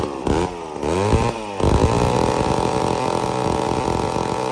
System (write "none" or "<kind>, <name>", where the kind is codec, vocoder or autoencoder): none